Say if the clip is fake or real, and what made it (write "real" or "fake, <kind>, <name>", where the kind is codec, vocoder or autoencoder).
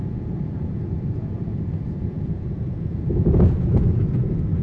fake, vocoder, Vocos